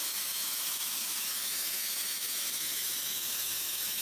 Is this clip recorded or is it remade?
remade